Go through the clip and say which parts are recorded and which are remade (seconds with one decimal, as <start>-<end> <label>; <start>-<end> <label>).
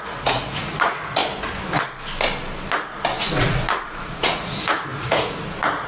0.0-1.2 remade; 1.2-3.2 recorded; 3.2-5.9 remade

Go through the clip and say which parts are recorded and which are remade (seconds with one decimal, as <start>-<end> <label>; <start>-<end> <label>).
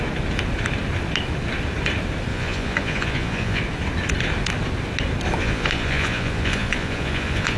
0.0-2.3 recorded; 2.3-3.6 remade; 3.6-5.4 recorded; 5.4-7.6 remade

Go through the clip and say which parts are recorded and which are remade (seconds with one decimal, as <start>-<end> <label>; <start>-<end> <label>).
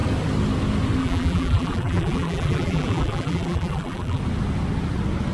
0.0-1.0 recorded; 1.0-4.2 remade; 4.2-5.3 recorded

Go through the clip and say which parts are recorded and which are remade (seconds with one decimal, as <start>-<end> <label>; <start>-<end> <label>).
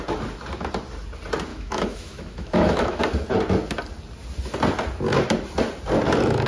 0.0-1.5 recorded; 1.5-3.0 remade; 3.0-6.5 recorded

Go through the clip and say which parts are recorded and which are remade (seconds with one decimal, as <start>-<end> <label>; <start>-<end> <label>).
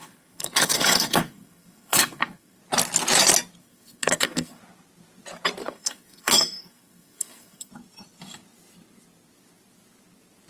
0.0-2.6 remade; 2.6-3.6 recorded; 3.6-4.6 remade; 4.6-5.6 recorded; 5.6-7.7 remade; 7.7-10.5 recorded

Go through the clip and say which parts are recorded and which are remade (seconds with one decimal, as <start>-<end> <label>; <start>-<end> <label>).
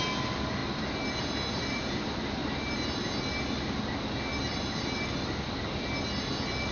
0.0-6.7 recorded